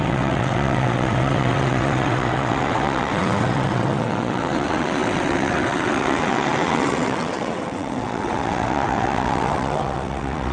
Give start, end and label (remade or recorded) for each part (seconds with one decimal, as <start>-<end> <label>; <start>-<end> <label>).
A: 0.0-10.5 remade